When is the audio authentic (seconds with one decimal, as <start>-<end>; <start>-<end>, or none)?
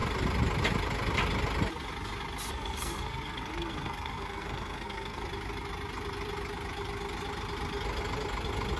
0.0-2.5; 5.2-8.8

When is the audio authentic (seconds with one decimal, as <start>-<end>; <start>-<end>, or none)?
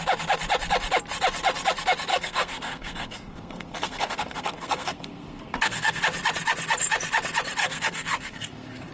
0.0-2.1; 6.0-7.6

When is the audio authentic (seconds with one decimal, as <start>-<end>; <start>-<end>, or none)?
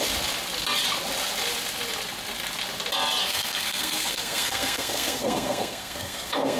0.0-3.2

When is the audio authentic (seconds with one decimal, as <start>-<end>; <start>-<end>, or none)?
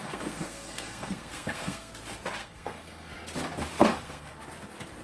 1.9-2.4; 3.1-3.8; 4.4-5.0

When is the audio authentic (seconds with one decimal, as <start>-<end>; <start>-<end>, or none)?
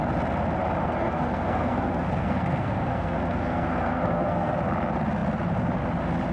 0.0-0.8; 4.6-6.3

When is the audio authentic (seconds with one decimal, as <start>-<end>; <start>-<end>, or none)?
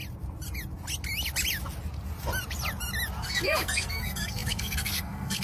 0.0-3.2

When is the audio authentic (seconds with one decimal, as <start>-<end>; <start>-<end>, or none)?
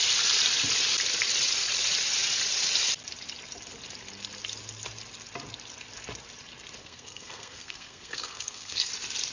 0.0-6.8; 8.9-9.3